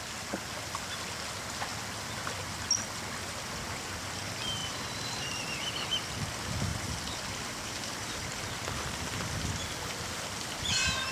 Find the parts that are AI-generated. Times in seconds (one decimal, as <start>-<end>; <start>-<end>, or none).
4.6-5.7; 6.7-9.5